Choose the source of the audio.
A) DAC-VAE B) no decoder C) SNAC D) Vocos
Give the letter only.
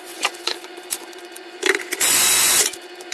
D